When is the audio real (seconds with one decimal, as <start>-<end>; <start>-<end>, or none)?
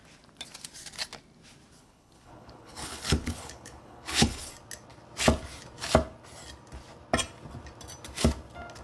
0.0-1.8; 4.5-8.8